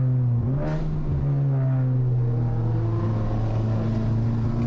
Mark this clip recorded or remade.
recorded